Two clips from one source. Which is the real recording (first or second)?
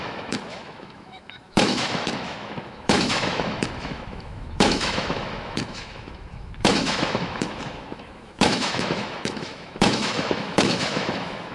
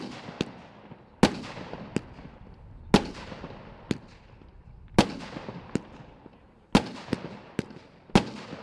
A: second